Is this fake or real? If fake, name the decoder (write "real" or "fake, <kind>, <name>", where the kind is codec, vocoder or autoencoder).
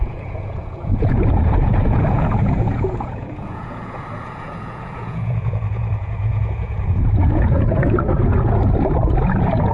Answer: fake, vocoder, Vocos